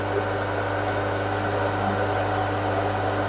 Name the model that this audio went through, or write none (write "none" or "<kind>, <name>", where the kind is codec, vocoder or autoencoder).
none